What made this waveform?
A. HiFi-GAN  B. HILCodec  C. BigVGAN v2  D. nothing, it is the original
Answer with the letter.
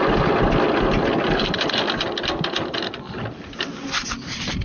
D